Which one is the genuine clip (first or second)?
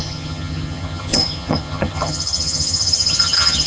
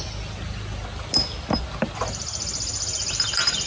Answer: second